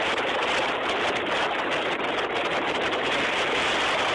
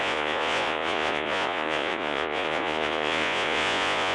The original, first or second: first